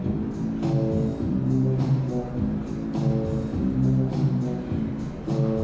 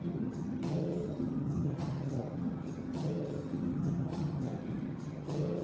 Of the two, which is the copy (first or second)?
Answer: second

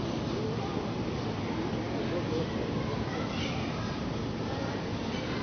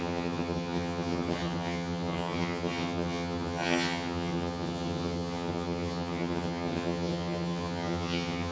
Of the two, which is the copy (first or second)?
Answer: second